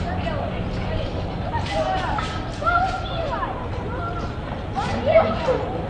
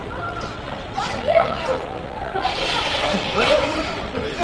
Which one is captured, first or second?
first